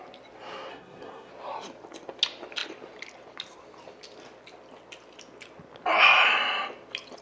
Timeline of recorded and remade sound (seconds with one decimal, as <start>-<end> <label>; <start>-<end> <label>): 0.0-0.7 recorded; 0.7-1.3 remade; 1.3-7.2 recorded